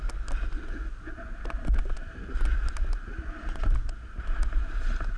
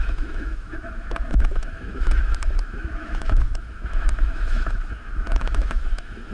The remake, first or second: second